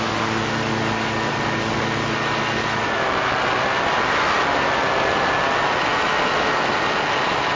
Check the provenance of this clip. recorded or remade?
recorded